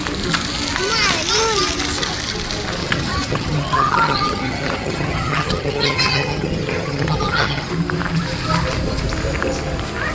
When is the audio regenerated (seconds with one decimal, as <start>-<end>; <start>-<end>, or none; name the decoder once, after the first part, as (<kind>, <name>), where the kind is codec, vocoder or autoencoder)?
2.8-7.7 (vocoder, HiFi-GAN)

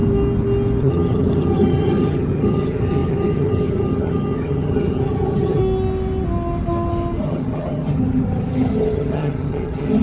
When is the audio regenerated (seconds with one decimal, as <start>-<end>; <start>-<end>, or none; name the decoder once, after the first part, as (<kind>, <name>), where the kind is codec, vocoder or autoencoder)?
0.8-5.6 (vocoder, HiFi-GAN); 7.2-10.0

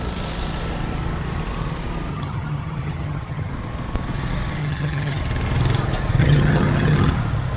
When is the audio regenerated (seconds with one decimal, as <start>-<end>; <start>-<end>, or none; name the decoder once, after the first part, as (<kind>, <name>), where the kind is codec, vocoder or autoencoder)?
2.1-3.5 (vocoder, HiFi-GAN); 4.6-5.2; 6.2-7.1

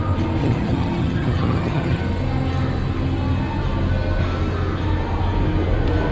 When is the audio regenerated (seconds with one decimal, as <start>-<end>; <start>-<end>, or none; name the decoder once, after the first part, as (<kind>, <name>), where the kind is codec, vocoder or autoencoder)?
0.4-2.0 (vocoder, HiFi-GAN)